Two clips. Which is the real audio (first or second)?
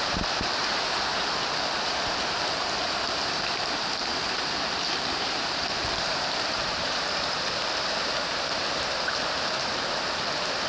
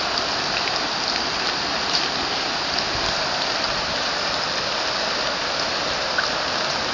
second